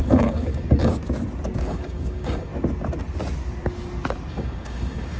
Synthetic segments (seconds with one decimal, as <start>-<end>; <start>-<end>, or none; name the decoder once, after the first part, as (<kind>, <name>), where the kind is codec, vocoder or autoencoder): 0.0-0.9 (codec, DAC); 1.7-2.5; 4.3-5.2